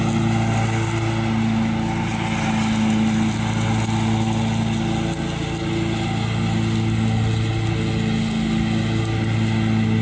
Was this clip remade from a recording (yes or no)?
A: no